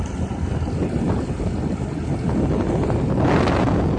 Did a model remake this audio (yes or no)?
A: no